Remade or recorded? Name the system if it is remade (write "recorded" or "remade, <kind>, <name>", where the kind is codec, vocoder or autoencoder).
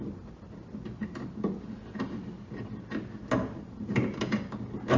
recorded